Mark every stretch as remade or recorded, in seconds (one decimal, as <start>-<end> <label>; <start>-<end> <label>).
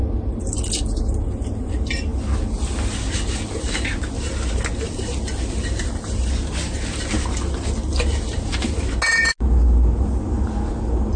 0.0-11.2 recorded